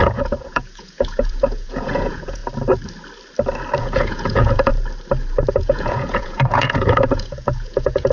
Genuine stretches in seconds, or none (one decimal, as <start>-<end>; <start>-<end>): 2.4-3.8; 4.7-5.5